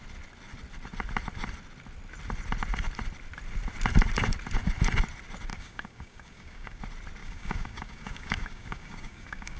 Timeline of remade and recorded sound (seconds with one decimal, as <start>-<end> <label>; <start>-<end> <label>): 0.0-5.5 recorded; 5.5-6.8 remade; 6.8-7.2 recorded; 7.2-9.6 remade